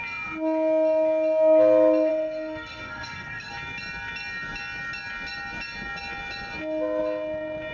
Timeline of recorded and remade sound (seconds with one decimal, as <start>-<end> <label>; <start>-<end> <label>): 0.0-2.1 recorded; 2.1-3.5 remade; 3.5-7.7 recorded